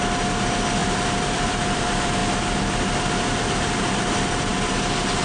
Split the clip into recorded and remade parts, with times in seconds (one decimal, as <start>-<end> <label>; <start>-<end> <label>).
0.0-2.2 remade; 2.2-3.8 recorded; 3.8-4.5 remade; 4.5-5.2 recorded